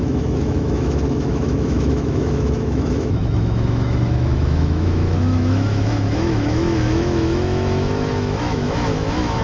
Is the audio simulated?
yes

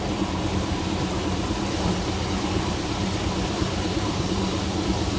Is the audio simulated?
yes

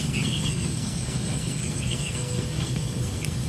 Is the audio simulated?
yes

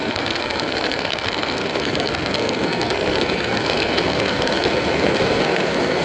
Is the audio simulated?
yes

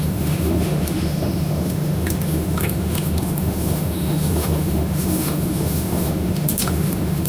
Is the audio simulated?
yes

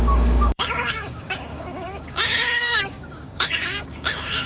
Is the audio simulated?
yes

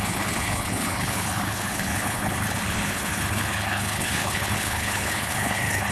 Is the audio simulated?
yes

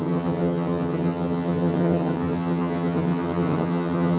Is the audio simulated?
yes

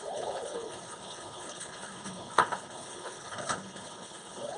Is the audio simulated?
yes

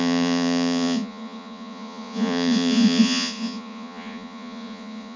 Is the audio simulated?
yes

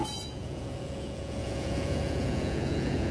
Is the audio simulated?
yes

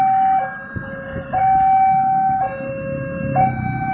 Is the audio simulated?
no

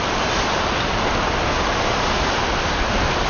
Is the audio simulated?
no